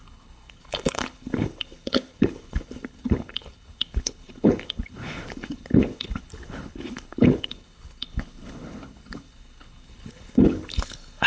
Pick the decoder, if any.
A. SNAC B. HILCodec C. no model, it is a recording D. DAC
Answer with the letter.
B